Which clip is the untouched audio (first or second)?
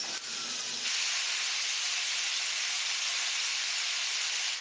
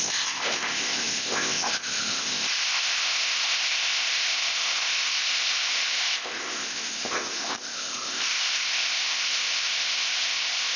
first